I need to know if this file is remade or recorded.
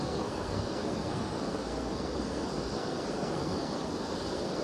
remade